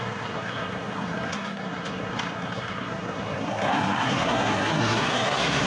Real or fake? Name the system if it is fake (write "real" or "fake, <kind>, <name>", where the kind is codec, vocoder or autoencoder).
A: fake, codec, SNAC